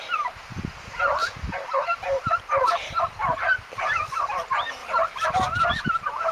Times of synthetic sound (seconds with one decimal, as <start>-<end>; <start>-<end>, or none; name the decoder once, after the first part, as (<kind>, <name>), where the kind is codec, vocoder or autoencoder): 1.2-3.8 (vocoder, BigVGAN v2)